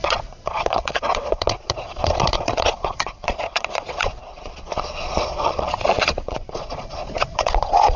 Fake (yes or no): yes